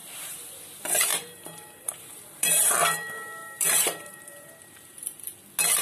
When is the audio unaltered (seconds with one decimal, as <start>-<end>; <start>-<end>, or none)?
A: 0.6-1.1; 2.7-3.4; 5.2-5.8